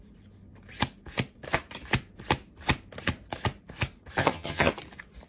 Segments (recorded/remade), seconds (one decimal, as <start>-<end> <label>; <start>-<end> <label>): 0.0-4.2 recorded; 4.2-4.7 remade; 4.7-5.3 recorded